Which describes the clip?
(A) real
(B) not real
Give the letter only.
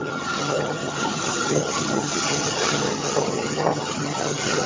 B